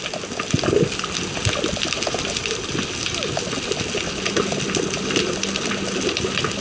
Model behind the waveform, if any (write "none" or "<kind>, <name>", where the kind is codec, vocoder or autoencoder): none